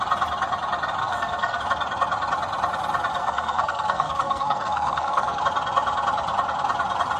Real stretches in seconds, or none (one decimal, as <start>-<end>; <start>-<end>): 0.0-1.0; 1.6-3.2; 5.4-7.2